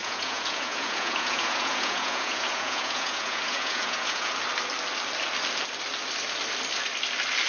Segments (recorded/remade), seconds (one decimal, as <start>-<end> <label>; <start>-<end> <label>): 0.0-4.3 remade; 4.3-7.5 recorded